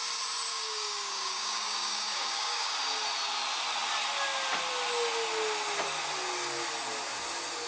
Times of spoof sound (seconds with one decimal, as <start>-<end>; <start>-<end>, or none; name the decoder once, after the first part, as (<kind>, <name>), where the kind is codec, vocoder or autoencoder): 0.5-2.7 (codec, DAC)